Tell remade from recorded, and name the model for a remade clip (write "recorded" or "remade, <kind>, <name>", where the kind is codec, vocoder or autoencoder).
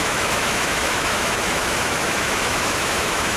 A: remade, autoencoder, DAC-VAE